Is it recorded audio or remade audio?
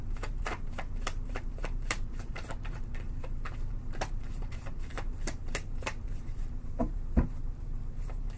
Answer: remade